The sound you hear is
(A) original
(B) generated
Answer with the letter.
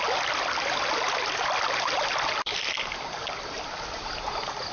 A